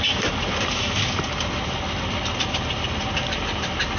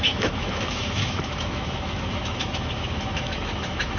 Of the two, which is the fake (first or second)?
second